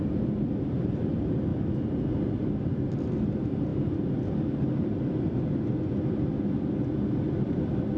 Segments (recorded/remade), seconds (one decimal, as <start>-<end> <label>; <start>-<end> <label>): 0.0-8.0 recorded